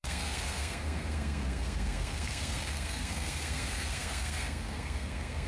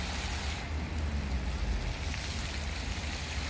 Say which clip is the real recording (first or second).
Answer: second